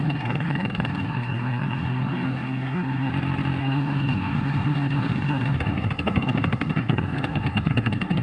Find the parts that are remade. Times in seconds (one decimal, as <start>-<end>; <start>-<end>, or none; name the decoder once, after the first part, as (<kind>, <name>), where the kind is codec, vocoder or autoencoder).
0.0-3.1 (codec, SNAC); 3.6-8.2

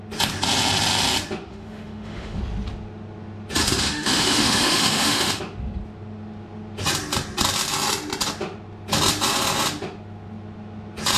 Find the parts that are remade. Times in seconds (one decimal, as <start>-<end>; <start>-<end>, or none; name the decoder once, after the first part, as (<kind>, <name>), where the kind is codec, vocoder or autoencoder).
1.5-2.4 (autoencoder, DAC-VAE); 3.6-5.4

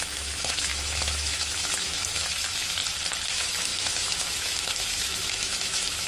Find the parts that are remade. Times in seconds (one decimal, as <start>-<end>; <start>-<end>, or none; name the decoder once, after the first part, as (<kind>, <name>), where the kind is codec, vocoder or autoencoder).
0.0-2.8 (autoencoder, DAC-VAE); 3.3-6.1

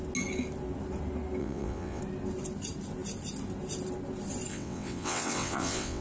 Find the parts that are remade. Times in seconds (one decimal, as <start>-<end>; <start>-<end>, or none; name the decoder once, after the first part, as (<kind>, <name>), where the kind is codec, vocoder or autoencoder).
1.4-2.0 (vocoder, WaveNeXt); 4.5-6.0

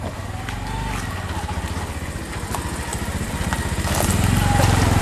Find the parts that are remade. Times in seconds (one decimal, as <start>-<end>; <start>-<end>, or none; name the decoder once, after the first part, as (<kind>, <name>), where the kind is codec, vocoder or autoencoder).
none

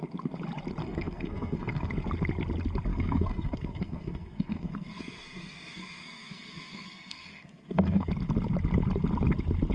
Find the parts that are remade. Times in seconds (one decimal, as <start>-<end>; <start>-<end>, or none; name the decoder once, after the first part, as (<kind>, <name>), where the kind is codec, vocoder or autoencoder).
0.8-1.9 (codec, SNAC); 2.9-8.1

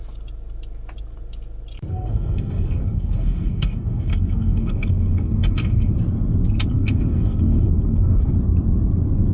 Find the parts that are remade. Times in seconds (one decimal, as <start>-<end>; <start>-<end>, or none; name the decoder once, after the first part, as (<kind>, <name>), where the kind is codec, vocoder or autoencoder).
1.9-5.9 (codec, SNAC); 6.7-8.3